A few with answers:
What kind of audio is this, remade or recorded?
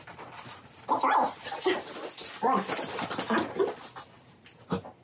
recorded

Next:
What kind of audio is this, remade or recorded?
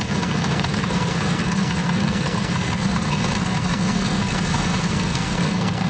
remade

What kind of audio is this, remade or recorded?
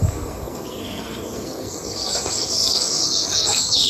remade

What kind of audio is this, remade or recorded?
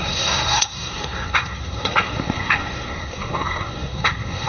remade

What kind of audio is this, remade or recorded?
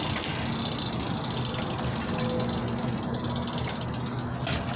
recorded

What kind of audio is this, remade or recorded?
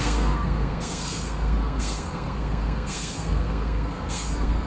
remade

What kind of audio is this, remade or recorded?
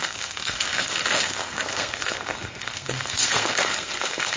remade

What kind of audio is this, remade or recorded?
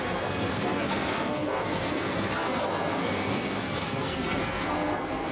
remade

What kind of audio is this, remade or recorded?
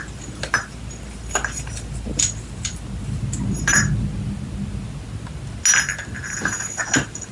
recorded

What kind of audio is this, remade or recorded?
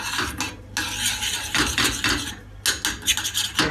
recorded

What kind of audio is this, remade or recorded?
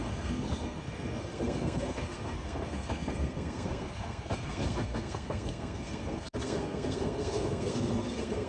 remade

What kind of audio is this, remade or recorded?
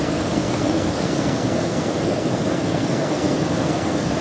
remade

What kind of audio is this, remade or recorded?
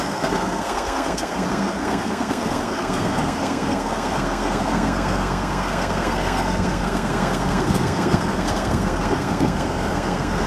remade